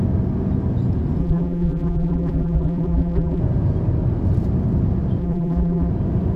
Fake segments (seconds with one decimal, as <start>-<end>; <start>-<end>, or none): 1.2-3.4; 5.2-5.9